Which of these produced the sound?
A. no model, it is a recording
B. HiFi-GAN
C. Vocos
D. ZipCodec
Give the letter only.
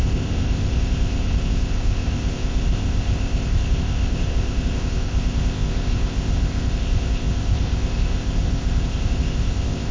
D